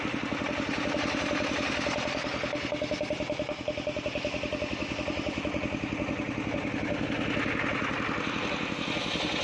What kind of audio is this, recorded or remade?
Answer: recorded